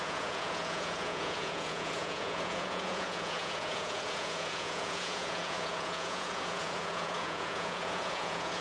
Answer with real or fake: fake